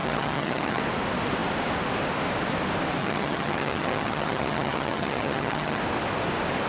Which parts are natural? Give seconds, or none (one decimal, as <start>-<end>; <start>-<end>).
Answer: 0.8-3.0; 5.8-6.7